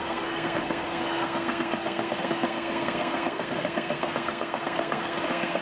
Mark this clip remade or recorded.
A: remade